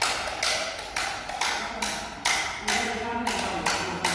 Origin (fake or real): real